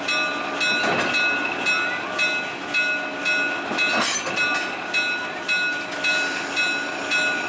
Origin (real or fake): real